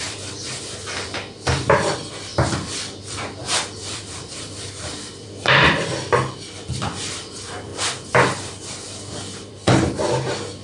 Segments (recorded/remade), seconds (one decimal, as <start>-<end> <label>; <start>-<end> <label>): 0.0-2.3 remade; 2.3-2.8 recorded; 2.8-10.6 remade